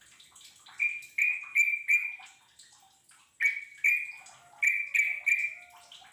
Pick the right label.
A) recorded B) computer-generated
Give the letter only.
A